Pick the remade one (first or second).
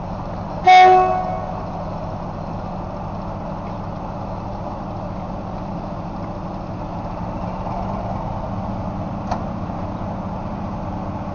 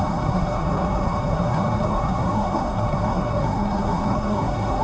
second